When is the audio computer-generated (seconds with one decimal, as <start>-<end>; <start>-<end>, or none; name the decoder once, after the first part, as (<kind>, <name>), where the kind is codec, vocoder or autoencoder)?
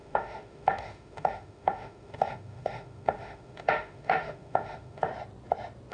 0.0-5.1 (autoencoder, DAC-VAE)